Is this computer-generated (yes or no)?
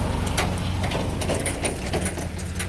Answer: no